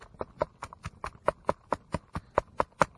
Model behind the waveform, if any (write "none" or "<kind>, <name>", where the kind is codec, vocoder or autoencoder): none